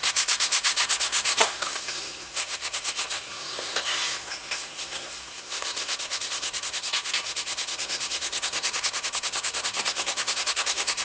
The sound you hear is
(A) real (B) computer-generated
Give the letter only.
B